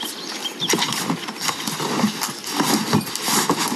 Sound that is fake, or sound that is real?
real